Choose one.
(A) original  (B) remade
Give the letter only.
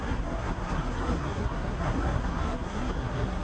B